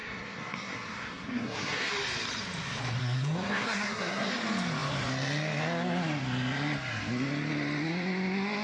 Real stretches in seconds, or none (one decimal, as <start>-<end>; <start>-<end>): 1.9-3.0; 4.3-8.6